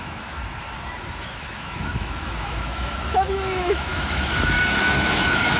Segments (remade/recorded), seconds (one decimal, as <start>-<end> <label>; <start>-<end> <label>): 0.0-0.4 remade; 0.4-1.1 recorded; 1.1-5.6 remade